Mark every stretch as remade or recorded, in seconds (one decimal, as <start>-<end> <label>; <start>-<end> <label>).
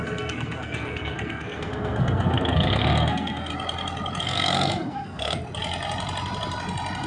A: 0.0-3.5 remade; 3.5-4.2 recorded; 4.2-5.4 remade; 5.4-7.1 recorded